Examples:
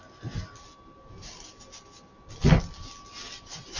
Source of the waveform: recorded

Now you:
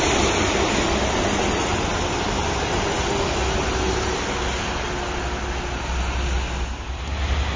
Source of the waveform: recorded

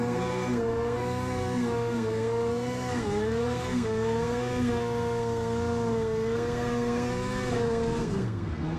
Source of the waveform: remade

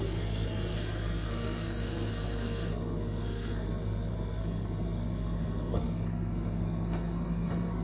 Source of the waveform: remade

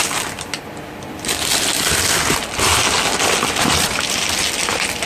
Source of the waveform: recorded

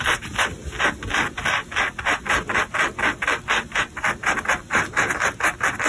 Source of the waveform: recorded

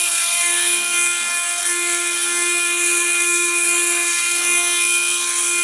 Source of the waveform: remade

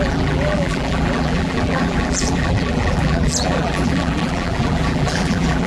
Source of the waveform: remade